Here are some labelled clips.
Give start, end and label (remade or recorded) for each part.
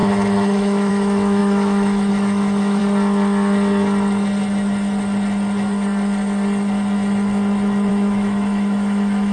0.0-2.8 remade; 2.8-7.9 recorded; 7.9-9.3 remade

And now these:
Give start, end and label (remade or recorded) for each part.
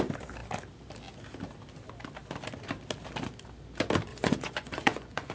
0.0-4.1 recorded; 4.1-5.3 remade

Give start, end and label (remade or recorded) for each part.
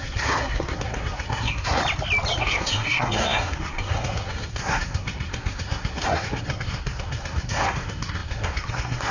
0.0-1.8 remade; 1.8-2.4 recorded; 2.4-9.1 remade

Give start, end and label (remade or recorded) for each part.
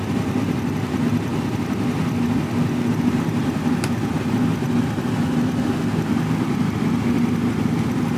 0.0-8.2 recorded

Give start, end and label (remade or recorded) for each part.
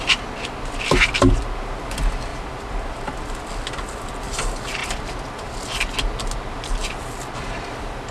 0.0-2.3 recorded; 2.3-3.1 remade; 3.1-4.8 recorded; 4.8-5.5 remade; 5.5-8.1 recorded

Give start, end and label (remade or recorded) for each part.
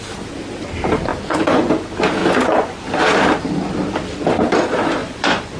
0.0-1.1 recorded; 1.1-1.7 remade; 1.7-2.2 recorded; 2.2-2.8 remade; 2.8-5.0 recorded; 5.0-5.6 remade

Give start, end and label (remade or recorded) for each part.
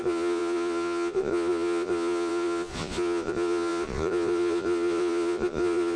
0.0-6.0 remade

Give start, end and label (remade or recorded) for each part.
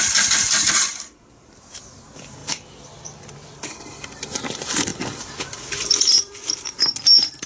0.0-4.9 remade; 4.9-5.4 recorded; 5.4-7.5 remade